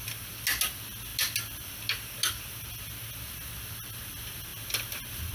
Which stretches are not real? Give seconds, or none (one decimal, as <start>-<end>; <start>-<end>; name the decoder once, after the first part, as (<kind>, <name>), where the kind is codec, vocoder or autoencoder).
none